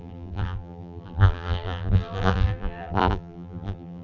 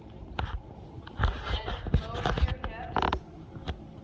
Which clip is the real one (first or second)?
second